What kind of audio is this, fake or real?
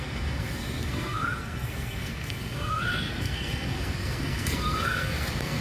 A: fake